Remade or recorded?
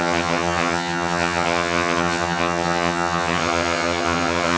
remade